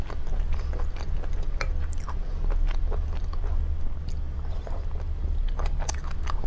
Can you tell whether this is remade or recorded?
recorded